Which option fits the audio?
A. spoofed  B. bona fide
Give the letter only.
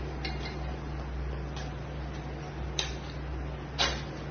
B